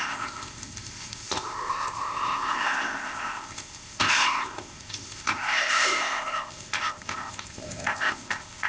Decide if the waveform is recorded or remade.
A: remade